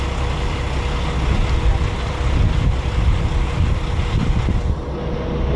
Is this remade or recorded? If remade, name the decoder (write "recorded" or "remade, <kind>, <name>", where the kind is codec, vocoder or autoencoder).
recorded